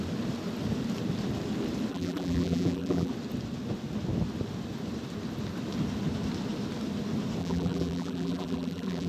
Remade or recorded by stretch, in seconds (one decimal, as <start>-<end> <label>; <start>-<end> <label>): 0.0-1.9 recorded; 1.9-3.1 remade; 3.1-7.4 recorded; 7.4-9.1 remade